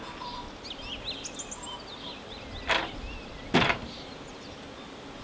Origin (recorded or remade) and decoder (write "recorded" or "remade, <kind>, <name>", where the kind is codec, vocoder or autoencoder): recorded